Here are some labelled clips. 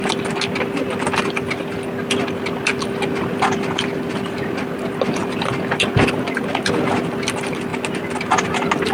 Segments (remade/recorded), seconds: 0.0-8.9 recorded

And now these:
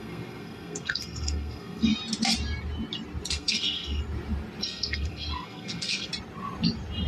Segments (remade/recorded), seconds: 0.0-1.9 remade; 1.9-3.3 recorded; 3.3-4.0 remade; 4.0-4.6 recorded; 4.6-6.1 remade; 6.1-7.1 recorded

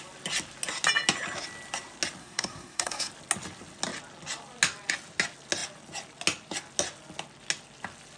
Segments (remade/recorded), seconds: 0.0-2.2 recorded; 2.2-3.1 remade; 3.1-8.2 recorded

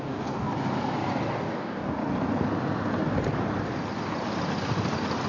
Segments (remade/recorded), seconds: 0.0-0.5 remade; 0.5-1.3 recorded; 1.3-2.0 remade; 2.0-5.3 recorded